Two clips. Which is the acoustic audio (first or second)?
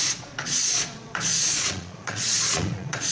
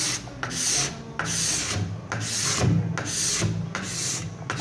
second